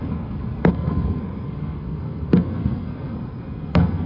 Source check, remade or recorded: remade